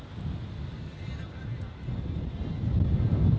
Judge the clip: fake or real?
real